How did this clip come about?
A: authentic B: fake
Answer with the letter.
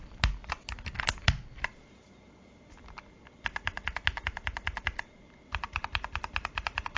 A